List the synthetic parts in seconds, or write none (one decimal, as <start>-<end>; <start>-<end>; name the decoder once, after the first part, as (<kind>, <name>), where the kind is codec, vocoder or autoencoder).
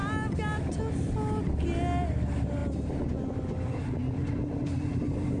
none